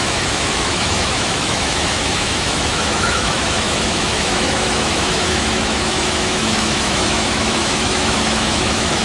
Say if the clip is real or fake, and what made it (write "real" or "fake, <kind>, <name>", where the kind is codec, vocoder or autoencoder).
fake, autoencoder, DAC-VAE